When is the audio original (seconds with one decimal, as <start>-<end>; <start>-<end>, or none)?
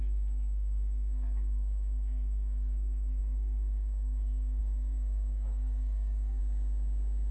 6.4-7.3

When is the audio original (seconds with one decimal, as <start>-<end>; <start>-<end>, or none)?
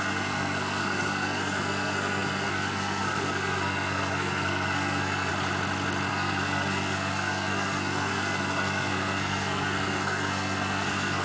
5.3-6.1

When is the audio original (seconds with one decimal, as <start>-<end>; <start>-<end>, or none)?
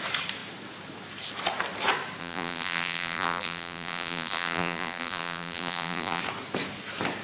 0.0-2.2; 6.2-7.2